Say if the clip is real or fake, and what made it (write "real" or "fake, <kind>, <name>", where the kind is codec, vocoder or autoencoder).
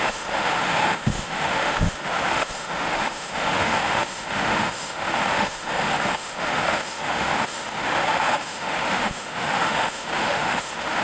fake, autoencoder, DAC-VAE